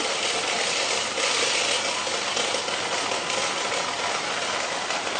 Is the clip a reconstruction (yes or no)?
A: no